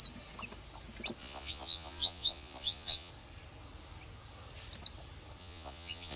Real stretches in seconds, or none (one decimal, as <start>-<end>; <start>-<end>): 0.0-1.2; 3.1-5.4